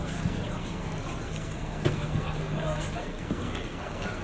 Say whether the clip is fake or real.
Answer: fake